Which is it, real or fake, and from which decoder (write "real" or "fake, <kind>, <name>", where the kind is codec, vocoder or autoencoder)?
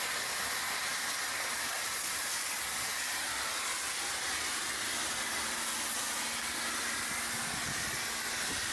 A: real